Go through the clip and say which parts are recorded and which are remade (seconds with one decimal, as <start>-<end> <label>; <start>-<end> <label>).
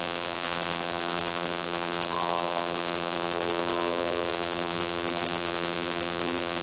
0.0-6.6 remade